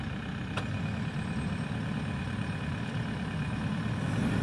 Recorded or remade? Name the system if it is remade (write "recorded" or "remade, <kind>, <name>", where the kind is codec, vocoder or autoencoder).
recorded